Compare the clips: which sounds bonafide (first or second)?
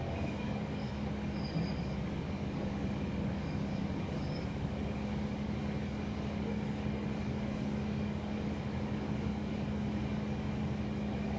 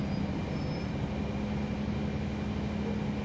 second